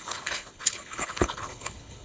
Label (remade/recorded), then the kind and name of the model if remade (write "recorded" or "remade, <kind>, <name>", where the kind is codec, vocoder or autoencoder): remade, codec, HILCodec